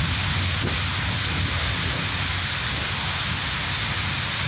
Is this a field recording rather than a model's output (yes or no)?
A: yes